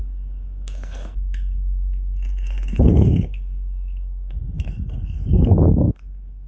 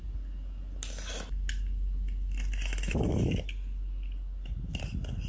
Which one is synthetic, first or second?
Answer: first